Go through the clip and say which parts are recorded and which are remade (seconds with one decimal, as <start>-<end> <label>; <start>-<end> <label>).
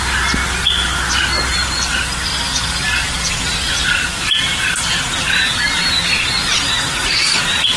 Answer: 0.0-7.8 recorded